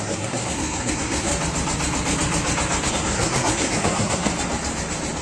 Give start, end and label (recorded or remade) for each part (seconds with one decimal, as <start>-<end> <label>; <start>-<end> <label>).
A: 0.0-1.3 remade; 1.3-2.9 recorded; 2.9-4.3 remade; 4.3-5.2 recorded